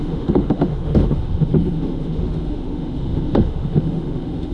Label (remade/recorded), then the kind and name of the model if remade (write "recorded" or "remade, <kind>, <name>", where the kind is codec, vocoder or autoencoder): remade, autoencoder, DAC-VAE